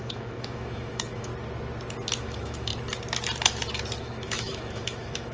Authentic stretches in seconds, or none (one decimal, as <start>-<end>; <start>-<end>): 1.3-2.2; 2.7-4.0